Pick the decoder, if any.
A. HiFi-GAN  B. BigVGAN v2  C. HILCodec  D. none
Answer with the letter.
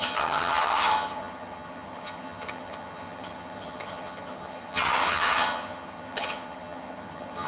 A